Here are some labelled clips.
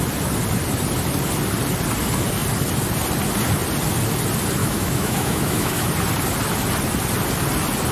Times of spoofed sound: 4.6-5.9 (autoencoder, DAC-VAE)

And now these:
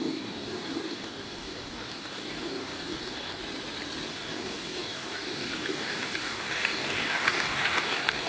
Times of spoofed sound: 0.0-3.4 (codec, DAC); 4.1-8.3